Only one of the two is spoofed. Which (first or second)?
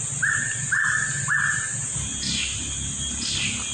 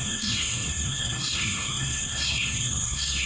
second